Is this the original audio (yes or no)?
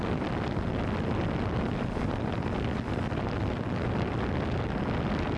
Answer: yes